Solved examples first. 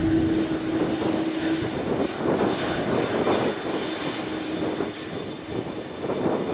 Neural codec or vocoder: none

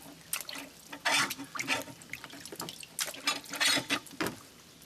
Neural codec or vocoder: none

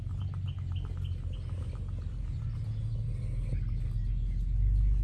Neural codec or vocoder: none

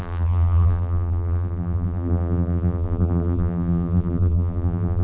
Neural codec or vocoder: vocoder, BigVGAN v2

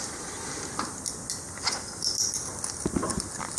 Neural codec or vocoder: none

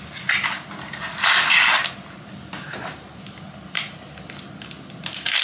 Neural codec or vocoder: none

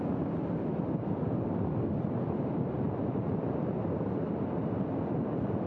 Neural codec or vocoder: vocoder, BigVGAN v2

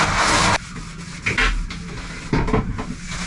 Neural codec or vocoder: none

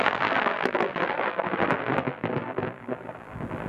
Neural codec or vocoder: vocoder, BigVGAN v2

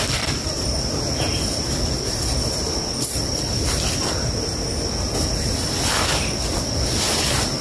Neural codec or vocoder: none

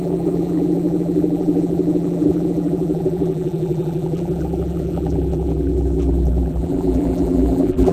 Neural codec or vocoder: vocoder, BigVGAN v2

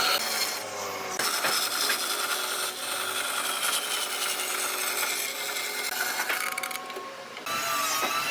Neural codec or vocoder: none